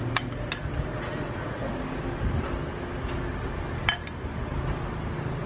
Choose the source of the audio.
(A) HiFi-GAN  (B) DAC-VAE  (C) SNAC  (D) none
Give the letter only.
D